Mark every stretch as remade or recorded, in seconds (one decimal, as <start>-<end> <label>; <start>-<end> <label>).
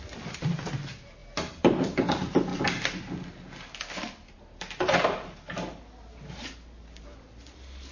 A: 0.0-7.9 recorded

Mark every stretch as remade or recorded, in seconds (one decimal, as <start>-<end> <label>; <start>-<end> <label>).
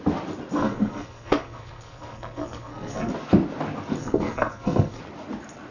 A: 0.0-0.6 recorded; 0.6-3.1 remade; 3.1-4.0 recorded; 4.0-5.0 remade; 5.0-5.7 recorded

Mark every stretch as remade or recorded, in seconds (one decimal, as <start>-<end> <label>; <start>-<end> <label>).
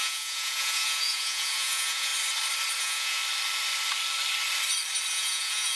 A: 0.0-2.1 remade; 2.1-2.8 recorded; 2.8-3.2 remade; 3.2-5.1 recorded; 5.1-5.8 remade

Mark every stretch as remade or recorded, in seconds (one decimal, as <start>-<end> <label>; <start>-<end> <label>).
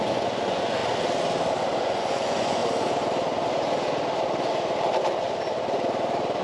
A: 0.0-0.8 remade; 0.8-1.8 recorded; 1.8-2.6 remade; 2.6-6.4 recorded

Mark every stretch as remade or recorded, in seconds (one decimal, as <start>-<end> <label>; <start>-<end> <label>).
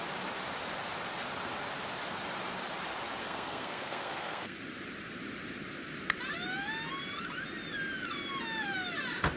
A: 0.0-3.2 recorded; 3.2-4.6 remade; 4.6-9.4 recorded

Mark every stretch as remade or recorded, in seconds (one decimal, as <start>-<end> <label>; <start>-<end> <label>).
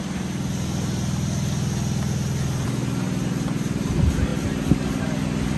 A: 0.0-5.6 recorded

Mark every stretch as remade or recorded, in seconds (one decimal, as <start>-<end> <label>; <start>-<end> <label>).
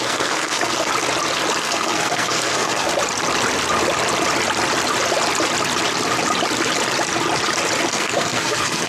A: 0.0-0.9 remade; 0.9-1.6 recorded; 1.6-2.9 remade; 2.9-7.9 recorded; 7.9-8.9 remade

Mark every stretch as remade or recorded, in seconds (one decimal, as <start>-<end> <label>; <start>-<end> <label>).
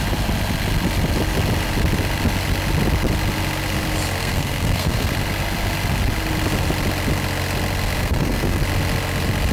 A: 0.0-4.2 recorded; 4.2-5.1 remade; 5.1-8.0 recorded; 8.0-8.6 remade; 8.6-9.5 recorded